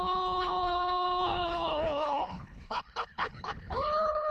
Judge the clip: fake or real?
fake